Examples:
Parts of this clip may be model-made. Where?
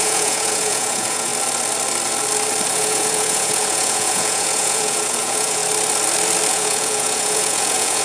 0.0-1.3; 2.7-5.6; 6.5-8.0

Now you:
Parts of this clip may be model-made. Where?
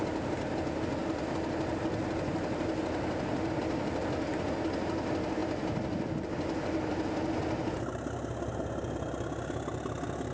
none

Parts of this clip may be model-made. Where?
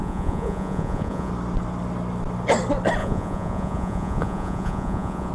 0.0-1.3; 3.0-5.3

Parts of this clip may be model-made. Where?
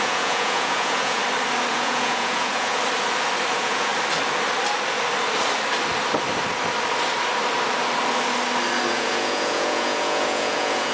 0.0-1.2; 1.7-2.8; 3.5-3.9; 8.9-10.9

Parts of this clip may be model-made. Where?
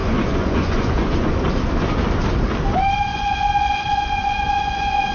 0.0-1.3; 3.1-5.1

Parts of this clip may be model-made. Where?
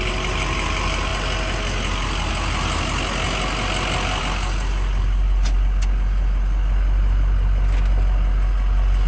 none